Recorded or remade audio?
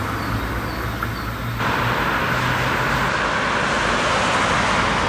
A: recorded